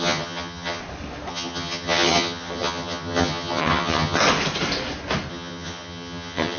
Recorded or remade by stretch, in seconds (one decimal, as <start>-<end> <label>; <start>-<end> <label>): 0.0-0.8 remade; 0.8-1.3 recorded; 1.3-4.2 remade; 4.2-5.3 recorded; 5.3-6.6 remade